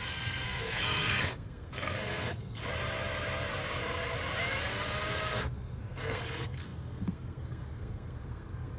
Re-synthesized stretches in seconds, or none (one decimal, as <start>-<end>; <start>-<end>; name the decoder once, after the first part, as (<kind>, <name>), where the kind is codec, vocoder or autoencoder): 0.0-2.6 (codec, SNAC); 5.1-8.8